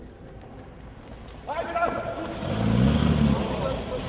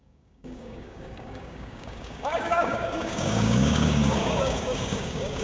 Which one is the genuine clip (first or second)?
first